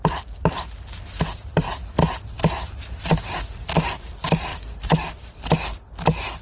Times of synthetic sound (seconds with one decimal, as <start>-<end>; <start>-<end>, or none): none